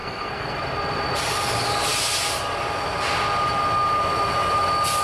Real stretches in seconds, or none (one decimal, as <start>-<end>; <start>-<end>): 0.6-5.0